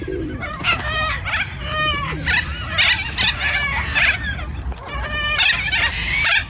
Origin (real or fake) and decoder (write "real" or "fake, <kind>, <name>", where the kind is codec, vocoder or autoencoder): real